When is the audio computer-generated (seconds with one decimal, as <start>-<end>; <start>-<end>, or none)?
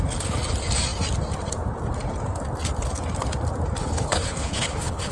3.8-5.1